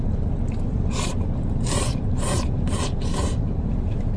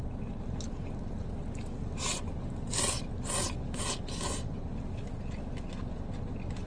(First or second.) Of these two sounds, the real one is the second